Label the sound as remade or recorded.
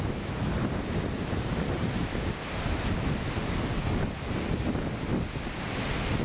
recorded